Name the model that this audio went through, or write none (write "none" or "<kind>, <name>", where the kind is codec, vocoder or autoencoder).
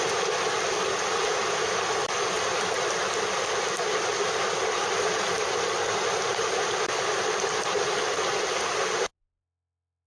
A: none